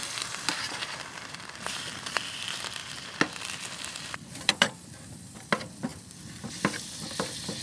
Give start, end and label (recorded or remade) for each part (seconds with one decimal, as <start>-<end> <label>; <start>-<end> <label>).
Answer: 0.0-7.6 remade